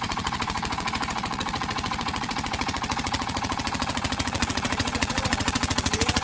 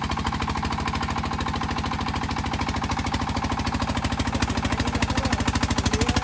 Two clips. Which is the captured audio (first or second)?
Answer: second